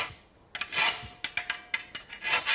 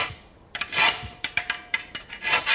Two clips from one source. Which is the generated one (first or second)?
second